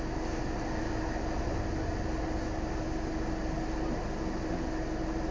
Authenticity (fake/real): real